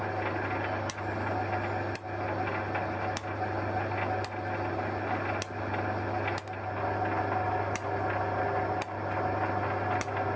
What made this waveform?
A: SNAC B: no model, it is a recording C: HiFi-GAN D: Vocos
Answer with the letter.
B